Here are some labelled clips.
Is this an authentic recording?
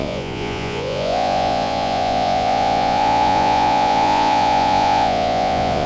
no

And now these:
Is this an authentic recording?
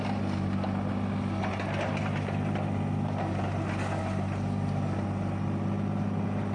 yes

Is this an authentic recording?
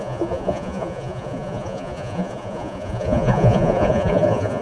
no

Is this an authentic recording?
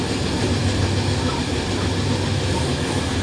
yes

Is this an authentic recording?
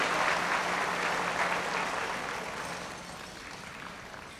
yes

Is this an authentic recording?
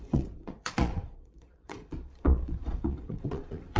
no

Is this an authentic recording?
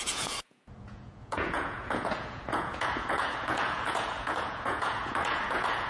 no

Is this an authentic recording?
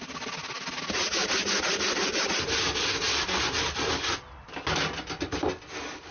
yes